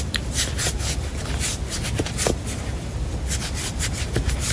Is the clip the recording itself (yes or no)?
yes